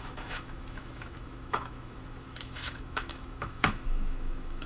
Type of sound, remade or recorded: remade